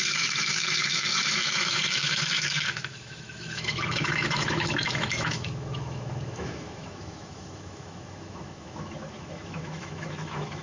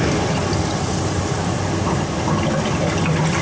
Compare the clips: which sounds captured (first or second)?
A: second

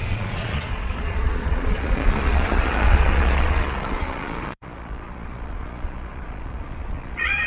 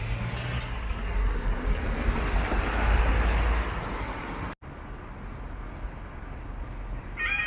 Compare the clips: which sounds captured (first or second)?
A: second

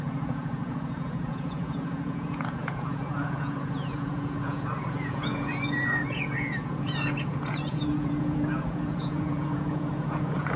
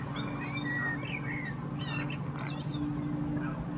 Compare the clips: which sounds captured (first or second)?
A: second